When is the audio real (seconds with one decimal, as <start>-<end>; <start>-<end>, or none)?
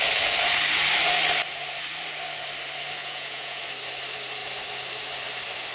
0.0-3.0; 3.6-5.7